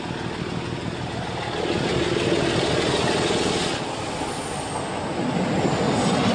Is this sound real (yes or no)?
yes